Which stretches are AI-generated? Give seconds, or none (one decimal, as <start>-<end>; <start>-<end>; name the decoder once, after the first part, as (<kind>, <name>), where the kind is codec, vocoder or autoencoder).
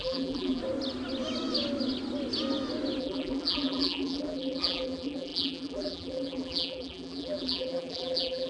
0.0-0.6 (vocoder, BigVGAN v2); 3.0-8.5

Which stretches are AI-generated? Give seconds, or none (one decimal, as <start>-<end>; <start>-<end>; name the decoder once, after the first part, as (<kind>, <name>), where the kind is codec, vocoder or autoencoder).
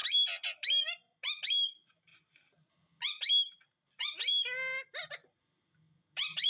none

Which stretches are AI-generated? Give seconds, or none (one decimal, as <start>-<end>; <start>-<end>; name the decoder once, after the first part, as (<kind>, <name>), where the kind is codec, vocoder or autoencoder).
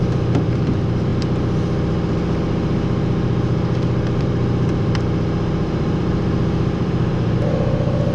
0.0-1.1 (vocoder, BigVGAN v2); 4.2-8.1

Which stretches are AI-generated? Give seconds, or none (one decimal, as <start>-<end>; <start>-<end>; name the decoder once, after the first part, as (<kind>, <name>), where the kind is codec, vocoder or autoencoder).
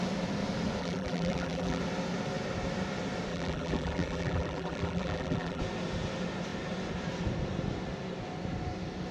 0.8-1.8 (vocoder, BigVGAN v2); 3.3-5.6